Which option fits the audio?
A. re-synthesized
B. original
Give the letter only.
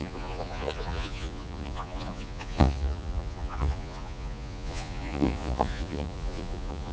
A